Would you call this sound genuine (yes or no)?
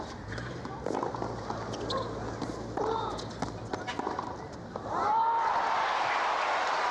yes